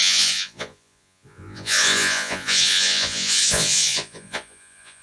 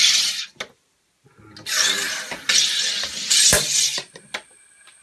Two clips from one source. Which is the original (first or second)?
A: second